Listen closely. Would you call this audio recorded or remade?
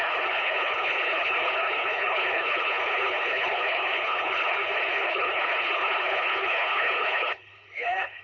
remade